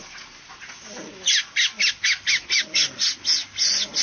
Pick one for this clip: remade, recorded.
recorded